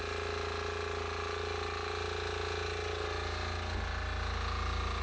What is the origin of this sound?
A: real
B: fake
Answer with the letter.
A